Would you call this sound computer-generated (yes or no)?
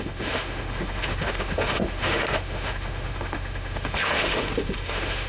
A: yes